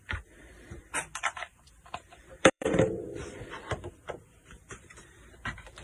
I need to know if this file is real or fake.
fake